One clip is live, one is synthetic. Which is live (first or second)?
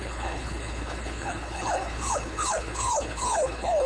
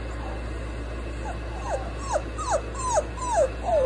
second